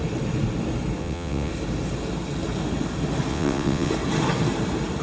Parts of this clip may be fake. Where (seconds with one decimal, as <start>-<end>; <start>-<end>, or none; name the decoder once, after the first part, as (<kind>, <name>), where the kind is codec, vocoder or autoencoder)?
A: 1.0-1.5 (vocoder, WaveNeXt); 3.3-3.9